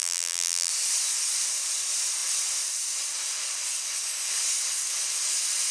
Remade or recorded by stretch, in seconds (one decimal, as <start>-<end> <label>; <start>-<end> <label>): 0.0-0.7 remade; 0.7-5.7 recorded